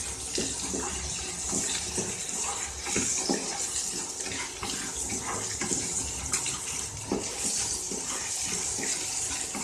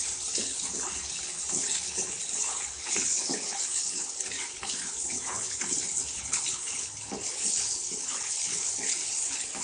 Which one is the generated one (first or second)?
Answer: second